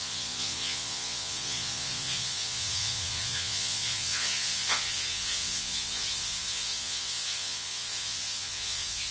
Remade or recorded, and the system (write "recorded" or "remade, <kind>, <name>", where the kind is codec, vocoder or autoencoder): remade, vocoder, Vocos